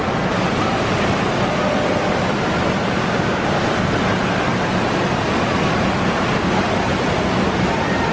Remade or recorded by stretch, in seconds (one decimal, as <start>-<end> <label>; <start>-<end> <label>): 0.0-3.0 recorded; 3.0-3.5 remade; 3.5-8.1 recorded